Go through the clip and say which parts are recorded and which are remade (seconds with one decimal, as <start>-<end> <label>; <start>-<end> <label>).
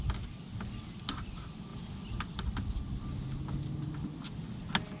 0.0-5.0 recorded